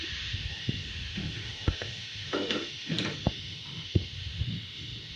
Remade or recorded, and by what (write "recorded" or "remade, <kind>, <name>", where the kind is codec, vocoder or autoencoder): remade, autoencoder, DAC-VAE